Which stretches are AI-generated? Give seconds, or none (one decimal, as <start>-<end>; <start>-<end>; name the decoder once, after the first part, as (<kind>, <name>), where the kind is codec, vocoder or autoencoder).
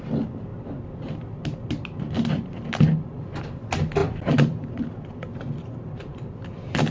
none